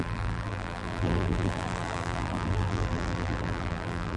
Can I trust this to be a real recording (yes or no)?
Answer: no